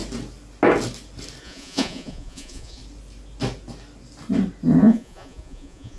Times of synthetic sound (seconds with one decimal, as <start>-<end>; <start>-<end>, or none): 1.4-2.8; 4.8-6.0